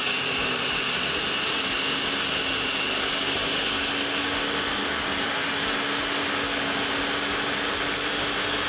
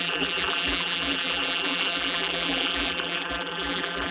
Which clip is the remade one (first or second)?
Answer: second